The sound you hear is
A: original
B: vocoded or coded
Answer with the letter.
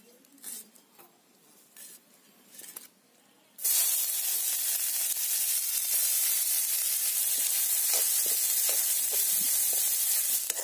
A